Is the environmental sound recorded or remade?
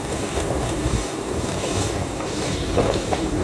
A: remade